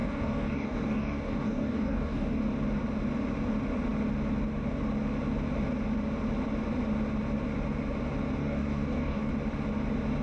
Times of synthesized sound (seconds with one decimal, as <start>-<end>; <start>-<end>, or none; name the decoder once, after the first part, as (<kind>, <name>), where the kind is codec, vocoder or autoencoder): 0.0-2.4 (codec, DAC); 8.4-9.3